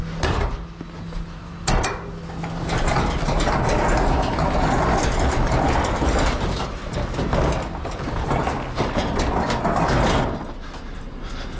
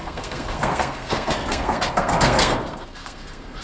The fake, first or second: second